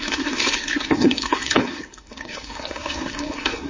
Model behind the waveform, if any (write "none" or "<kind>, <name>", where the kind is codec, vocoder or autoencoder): codec, SNAC